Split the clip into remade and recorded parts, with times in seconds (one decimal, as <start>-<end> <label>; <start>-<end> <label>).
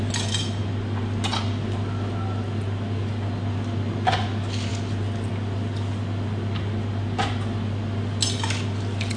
0.0-9.2 recorded